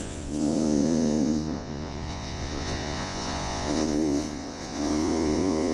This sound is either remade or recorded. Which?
remade